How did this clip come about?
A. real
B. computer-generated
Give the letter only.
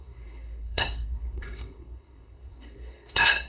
B